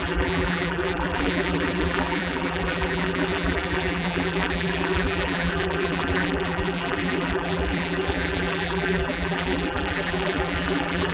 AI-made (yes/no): yes